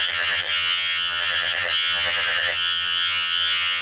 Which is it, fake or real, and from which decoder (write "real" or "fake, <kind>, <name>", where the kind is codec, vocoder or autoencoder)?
fake, vocoder, HiFi-GAN